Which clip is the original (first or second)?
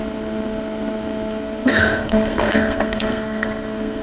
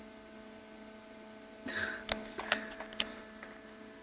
second